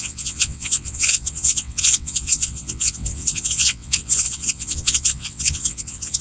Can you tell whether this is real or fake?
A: fake